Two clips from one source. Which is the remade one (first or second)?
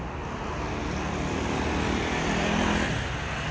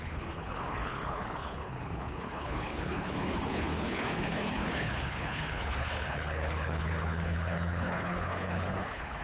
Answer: second